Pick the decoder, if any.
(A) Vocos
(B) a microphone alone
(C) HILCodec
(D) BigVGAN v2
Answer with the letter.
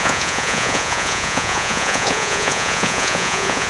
A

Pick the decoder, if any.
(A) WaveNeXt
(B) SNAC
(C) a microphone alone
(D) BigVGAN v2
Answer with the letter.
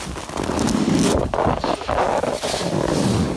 C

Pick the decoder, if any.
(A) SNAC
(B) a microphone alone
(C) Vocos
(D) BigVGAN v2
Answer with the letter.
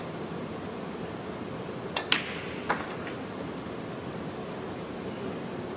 B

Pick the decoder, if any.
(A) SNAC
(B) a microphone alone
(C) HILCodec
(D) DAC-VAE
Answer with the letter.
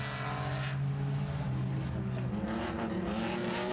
B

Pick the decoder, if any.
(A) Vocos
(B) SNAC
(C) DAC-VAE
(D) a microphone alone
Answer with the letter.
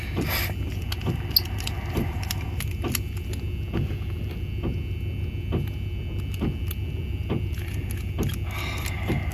D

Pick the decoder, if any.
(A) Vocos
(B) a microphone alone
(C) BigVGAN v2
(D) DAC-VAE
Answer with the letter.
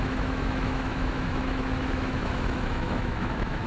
D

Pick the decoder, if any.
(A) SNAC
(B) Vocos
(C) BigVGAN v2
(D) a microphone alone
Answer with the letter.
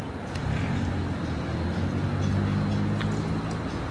D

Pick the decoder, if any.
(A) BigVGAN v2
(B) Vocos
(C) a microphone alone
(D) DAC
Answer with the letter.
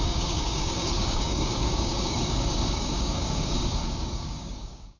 D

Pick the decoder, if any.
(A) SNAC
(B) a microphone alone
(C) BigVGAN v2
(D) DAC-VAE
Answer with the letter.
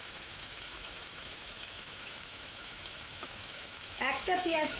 D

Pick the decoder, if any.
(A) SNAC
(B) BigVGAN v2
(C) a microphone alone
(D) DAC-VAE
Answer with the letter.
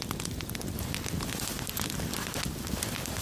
C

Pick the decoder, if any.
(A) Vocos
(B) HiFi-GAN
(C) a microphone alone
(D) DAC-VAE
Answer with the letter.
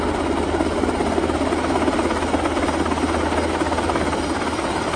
C